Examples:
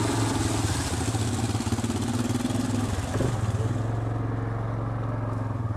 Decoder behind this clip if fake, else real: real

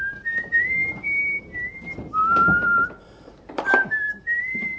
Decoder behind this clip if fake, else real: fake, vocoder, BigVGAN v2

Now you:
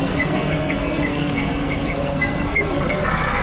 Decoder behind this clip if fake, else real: fake, codec, SNAC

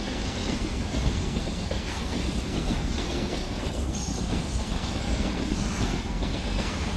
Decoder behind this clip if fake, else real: fake, codec, SNAC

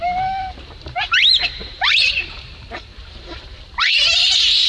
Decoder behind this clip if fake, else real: fake, vocoder, BigVGAN v2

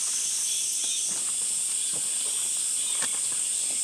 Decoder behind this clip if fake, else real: real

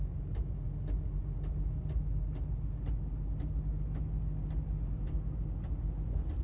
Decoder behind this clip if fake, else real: real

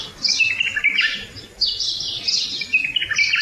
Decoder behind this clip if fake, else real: real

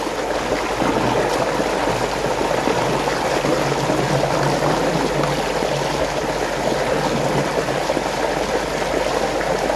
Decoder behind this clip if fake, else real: real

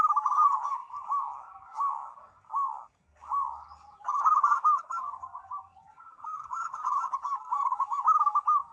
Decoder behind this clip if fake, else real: fake, codec, DAC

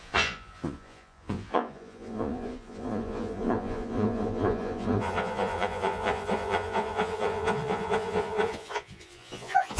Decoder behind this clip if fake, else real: fake, vocoder, Vocos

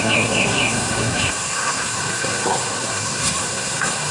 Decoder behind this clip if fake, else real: fake, codec, SNAC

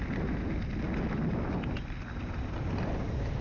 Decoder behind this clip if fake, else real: real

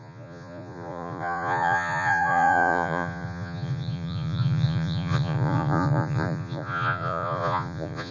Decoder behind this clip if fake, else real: fake, vocoder, Vocos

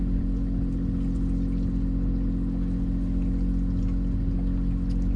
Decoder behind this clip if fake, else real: real